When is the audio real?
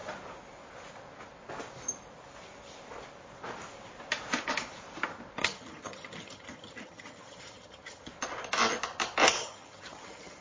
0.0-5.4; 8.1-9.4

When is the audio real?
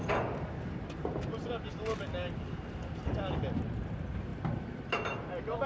0.0-5.7